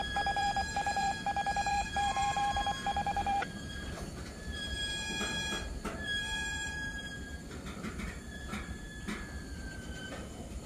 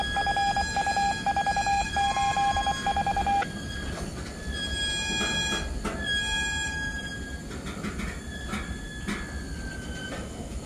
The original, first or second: second